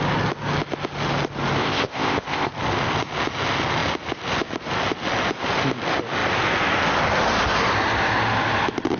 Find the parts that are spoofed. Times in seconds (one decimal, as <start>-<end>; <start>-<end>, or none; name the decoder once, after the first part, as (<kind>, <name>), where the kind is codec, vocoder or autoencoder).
1.6-2.5 (codec, ZipCodec)

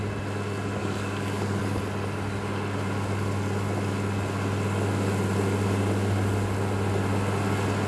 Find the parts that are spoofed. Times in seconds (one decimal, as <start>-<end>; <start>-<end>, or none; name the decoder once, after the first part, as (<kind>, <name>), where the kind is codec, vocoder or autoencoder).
0.8-1.6 (codec, DAC)

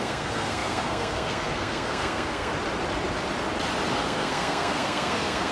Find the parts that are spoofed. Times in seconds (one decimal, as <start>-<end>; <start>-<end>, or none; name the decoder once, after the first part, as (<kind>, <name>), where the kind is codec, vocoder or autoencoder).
0.0-2.5 (codec, SNAC); 3.9-5.5

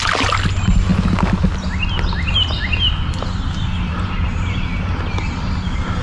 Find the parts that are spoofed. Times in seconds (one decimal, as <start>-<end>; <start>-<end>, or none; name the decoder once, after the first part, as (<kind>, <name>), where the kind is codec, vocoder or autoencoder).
none

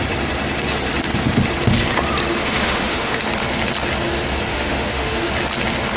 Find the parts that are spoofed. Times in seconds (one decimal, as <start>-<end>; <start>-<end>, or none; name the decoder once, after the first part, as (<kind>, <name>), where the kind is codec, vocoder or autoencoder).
2.3-3.3 (autoencoder, DAC-VAE); 4.5-5.3